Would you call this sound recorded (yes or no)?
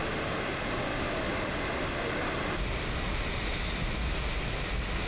yes